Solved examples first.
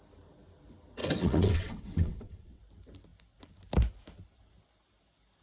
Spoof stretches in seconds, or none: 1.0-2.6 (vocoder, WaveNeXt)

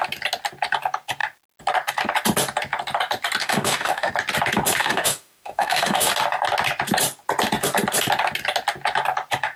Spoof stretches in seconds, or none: 3.4-4.1 (autoencoder, DAC-VAE); 4.8-6.1